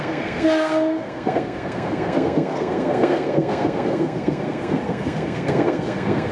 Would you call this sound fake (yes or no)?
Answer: yes